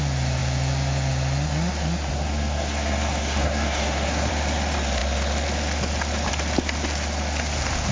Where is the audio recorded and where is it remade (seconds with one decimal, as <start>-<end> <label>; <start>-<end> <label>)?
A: 0.0-2.1 recorded; 2.1-4.3 remade; 4.3-7.9 recorded